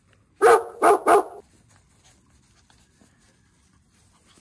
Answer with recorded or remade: recorded